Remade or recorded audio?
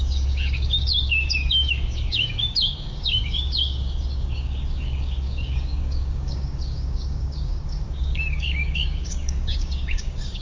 remade